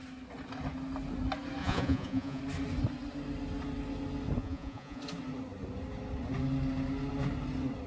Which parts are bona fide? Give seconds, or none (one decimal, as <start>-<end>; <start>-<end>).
0.0-1.6; 2.4-4.4; 5.0-7.9